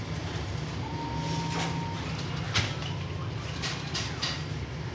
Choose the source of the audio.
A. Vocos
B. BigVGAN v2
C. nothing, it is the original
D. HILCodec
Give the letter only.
C